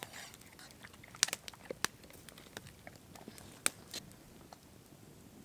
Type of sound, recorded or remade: recorded